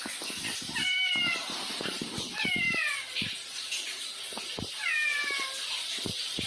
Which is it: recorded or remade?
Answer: recorded